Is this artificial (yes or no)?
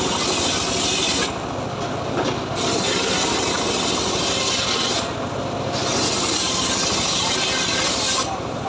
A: no